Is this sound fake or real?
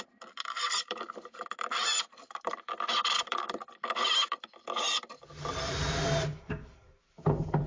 fake